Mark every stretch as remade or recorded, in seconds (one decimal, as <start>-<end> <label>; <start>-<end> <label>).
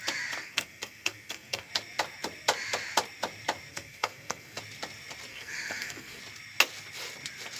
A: 0.0-0.4 recorded; 0.4-1.7 remade; 1.7-3.7 recorded; 3.7-4.6 remade; 4.6-5.3 recorded; 5.3-6.2 remade; 6.2-7.6 recorded